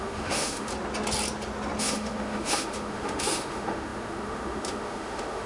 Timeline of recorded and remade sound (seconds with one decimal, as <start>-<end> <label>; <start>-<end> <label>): 0.0-0.7 remade; 0.7-1.8 recorded; 1.8-5.5 remade